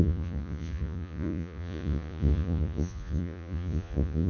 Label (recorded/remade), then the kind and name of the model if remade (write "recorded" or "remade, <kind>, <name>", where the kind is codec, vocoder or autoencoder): remade, vocoder, Vocos